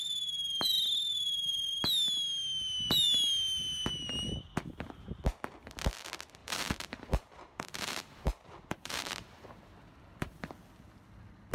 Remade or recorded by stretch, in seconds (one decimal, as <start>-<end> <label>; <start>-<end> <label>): 0.0-6.4 recorded; 6.4-10.5 remade; 10.5-11.5 recorded